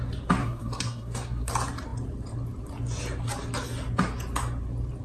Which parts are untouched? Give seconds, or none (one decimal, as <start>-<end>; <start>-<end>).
0.0-0.4; 1.5-5.0